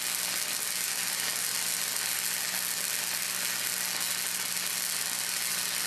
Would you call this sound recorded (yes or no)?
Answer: yes